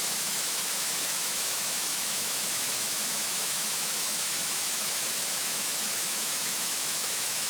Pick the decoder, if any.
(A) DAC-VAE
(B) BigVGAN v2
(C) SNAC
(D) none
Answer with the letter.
A